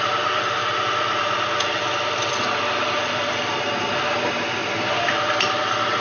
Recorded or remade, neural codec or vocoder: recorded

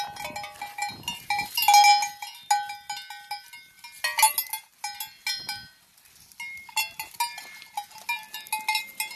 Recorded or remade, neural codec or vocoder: recorded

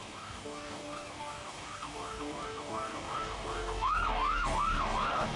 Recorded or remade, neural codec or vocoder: remade, codec, DAC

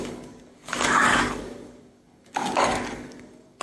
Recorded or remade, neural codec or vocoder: remade, codec, DAC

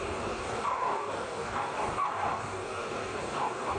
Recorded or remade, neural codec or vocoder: remade, codec, DAC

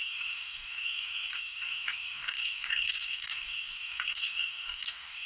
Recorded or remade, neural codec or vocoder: remade, codec, DAC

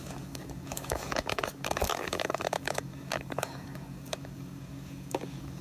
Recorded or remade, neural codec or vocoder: remade, codec, DAC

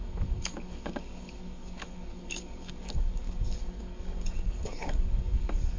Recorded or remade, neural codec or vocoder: remade, codec, DAC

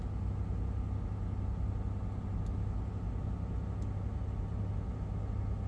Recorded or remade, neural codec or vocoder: recorded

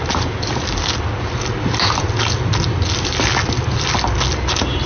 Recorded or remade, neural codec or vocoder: recorded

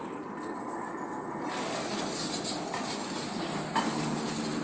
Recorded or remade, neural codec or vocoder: recorded